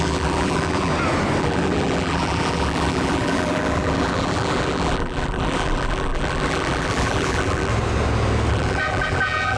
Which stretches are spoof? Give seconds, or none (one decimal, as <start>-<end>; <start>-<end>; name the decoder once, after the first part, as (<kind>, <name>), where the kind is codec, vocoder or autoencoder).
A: 0.0-0.9 (vocoder, BigVGAN v2); 1.4-7.7; 8.5-9.6